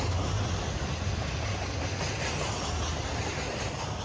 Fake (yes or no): no